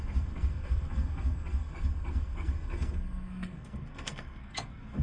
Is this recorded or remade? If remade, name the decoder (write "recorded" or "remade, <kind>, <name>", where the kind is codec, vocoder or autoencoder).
remade, codec, SNAC